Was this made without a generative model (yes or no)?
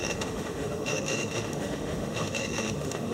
no